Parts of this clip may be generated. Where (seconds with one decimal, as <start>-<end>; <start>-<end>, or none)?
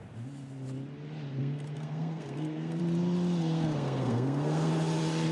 1.4-2.8; 3.4-4.7